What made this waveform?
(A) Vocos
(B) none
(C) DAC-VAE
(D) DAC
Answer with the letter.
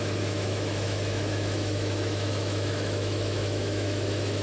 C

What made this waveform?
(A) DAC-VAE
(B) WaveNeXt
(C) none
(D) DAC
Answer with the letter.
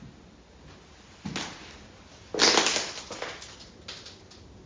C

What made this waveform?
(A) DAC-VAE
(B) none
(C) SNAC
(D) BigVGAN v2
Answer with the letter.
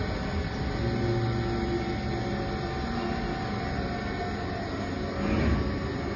B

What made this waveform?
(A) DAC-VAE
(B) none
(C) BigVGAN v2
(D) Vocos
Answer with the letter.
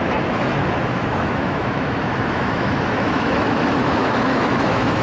A